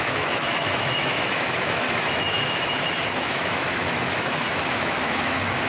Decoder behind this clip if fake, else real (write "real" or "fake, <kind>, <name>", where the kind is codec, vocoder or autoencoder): fake, autoencoder, DAC-VAE